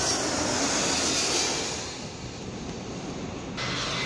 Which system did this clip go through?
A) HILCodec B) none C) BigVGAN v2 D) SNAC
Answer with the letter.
B